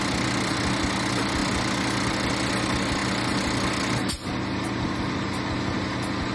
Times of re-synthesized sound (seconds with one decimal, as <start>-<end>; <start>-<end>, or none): none